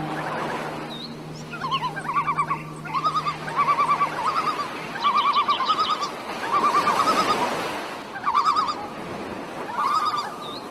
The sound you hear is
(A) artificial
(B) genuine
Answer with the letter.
B